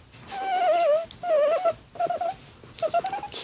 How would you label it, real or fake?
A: real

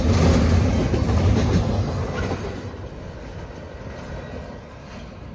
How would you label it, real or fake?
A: real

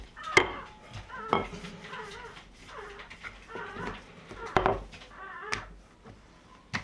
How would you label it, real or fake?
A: real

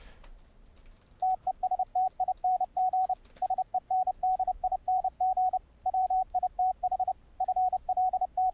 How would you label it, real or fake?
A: fake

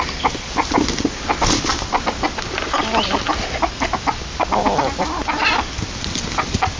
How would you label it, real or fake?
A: real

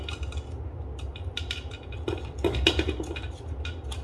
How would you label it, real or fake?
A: real